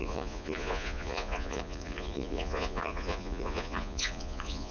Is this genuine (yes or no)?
no